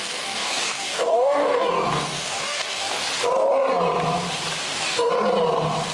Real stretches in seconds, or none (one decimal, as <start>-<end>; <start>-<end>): 3.0-4.6; 5.1-5.9